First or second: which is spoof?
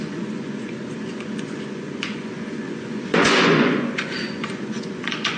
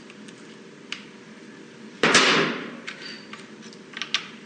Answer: first